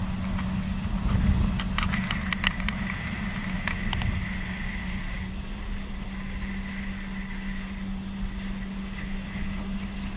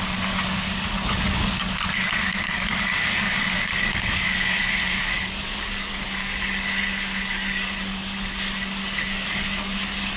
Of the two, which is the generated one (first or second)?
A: second